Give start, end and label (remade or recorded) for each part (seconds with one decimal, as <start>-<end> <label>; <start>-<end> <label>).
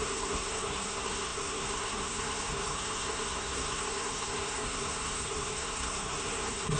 0.0-6.8 remade